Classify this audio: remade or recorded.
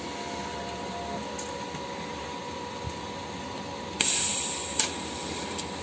recorded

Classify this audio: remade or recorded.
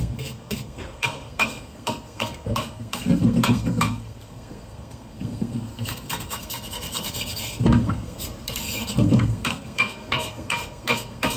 remade